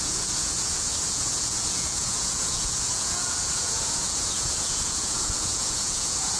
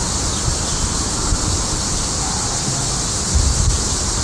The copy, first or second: first